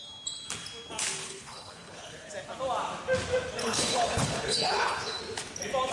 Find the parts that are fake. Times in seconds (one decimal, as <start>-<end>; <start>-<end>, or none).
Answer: 1.2-2.3; 3.6-5.2

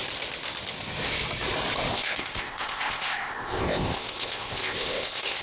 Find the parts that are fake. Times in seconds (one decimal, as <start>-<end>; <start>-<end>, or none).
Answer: 1.9-5.4

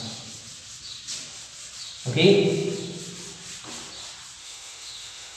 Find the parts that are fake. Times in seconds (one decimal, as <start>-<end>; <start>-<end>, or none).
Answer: 4.4-5.4

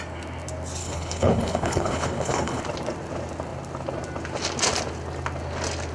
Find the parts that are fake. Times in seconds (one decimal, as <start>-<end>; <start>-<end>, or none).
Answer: 0.8-2.6